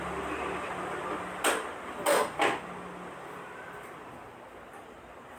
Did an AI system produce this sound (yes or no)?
no